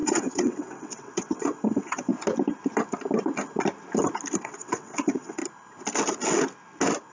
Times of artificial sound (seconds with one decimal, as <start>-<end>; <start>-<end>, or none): 0.0-2.1; 4.4-5.4